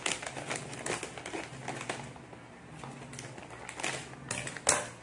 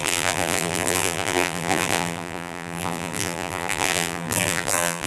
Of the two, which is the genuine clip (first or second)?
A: first